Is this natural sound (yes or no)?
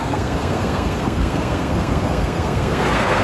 no